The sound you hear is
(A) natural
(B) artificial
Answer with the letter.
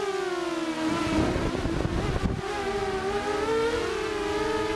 A